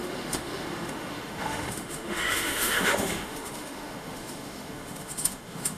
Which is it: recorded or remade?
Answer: remade